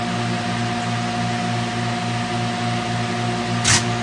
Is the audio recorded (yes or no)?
yes